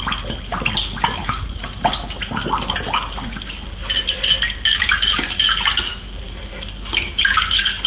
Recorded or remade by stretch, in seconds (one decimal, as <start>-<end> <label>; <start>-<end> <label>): 0.0-1.2 recorded; 1.2-1.9 remade; 1.9-7.9 recorded